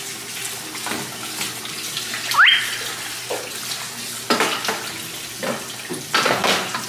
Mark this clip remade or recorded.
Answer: recorded